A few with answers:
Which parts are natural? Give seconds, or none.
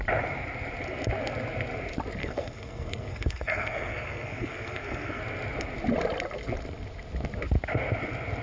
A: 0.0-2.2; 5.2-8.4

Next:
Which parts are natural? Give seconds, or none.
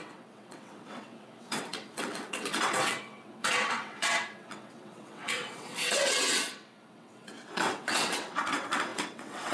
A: none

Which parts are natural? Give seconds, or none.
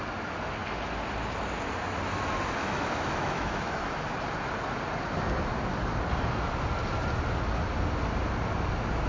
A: 0.0-2.6; 4.0-9.1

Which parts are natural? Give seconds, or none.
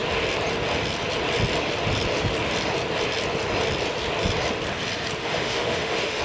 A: 0.0-5.2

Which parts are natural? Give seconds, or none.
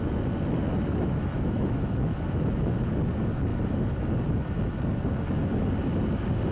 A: 0.0-0.7; 2.9-6.5